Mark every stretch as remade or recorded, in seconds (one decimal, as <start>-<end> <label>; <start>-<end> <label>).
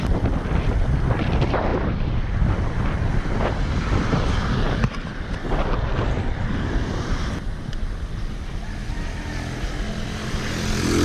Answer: 0.0-11.0 recorded